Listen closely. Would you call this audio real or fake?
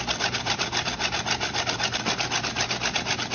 real